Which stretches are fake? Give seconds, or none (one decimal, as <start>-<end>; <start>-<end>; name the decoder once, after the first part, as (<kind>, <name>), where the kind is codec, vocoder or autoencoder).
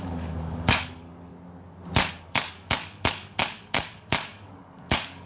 0.0-1.3 (codec, DAC); 2.2-5.3